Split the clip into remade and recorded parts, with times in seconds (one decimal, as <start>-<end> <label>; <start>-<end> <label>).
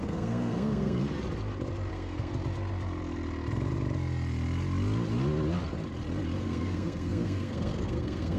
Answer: 0.0-1.0 remade; 1.0-1.9 recorded; 1.9-2.3 remade; 2.3-6.4 recorded; 6.4-8.4 remade